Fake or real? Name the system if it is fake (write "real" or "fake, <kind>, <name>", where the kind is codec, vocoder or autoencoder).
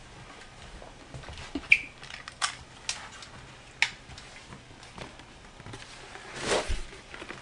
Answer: real